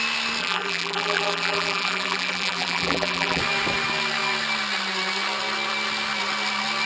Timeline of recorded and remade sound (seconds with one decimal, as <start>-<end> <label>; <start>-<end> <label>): 0.0-0.4 recorded; 0.4-3.4 remade; 3.4-6.9 recorded